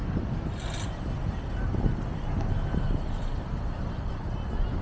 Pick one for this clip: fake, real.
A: real